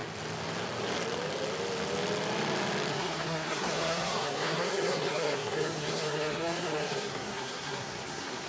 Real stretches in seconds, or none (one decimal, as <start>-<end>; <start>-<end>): 0.0-2.9